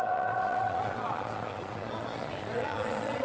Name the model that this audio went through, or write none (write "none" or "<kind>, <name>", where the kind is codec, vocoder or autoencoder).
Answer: vocoder, Vocos